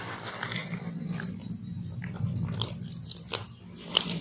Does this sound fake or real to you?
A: real